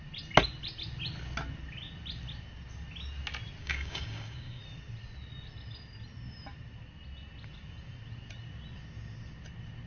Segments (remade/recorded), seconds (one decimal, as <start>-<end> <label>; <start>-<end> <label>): 0.0-3.6 recorded; 3.6-4.6 remade; 4.6-9.9 recorded